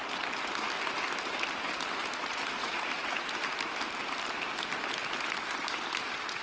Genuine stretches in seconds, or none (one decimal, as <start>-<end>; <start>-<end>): 0.0-2.2; 2.8-6.4